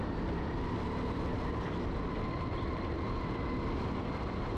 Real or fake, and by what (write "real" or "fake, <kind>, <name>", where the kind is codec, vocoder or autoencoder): fake, vocoder, BigVGAN v2